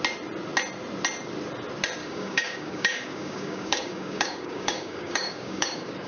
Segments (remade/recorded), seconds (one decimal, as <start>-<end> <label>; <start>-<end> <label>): 0.0-2.0 recorded; 2.0-6.1 remade